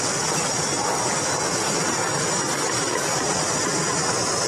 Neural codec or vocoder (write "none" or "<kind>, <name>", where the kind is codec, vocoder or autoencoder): none